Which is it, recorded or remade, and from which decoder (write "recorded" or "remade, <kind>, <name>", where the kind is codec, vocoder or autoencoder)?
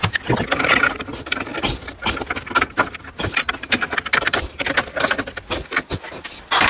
recorded